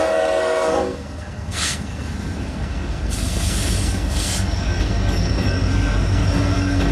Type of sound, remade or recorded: remade